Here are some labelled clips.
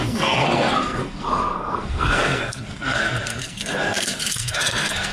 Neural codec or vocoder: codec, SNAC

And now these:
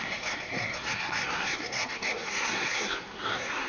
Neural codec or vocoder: codec, SNAC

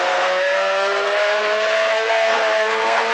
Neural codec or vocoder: codec, SNAC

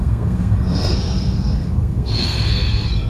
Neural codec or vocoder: codec, SNAC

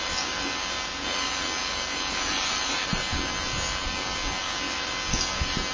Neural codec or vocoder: none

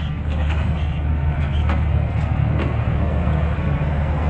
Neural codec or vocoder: codec, SNAC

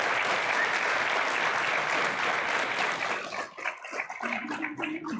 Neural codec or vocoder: none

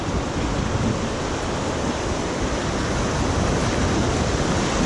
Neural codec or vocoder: none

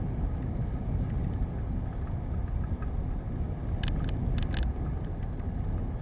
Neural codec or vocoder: none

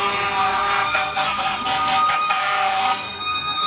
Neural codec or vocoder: codec, SNAC